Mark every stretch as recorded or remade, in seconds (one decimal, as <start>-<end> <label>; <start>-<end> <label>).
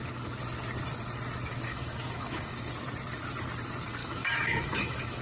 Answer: 0.0-1.7 recorded; 1.7-2.7 remade; 2.7-4.0 recorded; 4.0-5.2 remade